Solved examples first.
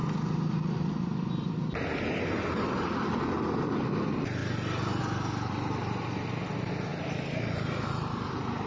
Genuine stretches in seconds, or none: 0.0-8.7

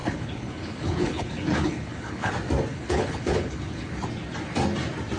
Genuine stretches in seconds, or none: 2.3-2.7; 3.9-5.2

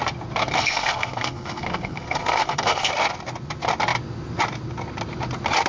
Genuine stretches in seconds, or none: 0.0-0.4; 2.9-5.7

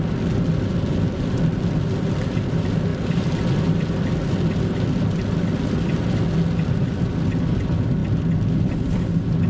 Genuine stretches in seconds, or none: 0.0-9.5

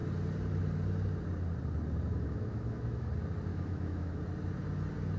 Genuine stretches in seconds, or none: 0.0-2.1; 3.1-3.5; 4.2-5.2

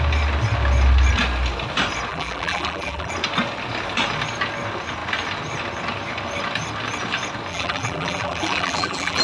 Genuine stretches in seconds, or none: 0.0-2.1; 3.1-7.5

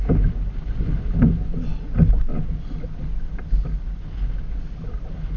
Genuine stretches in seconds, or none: 0.0-5.4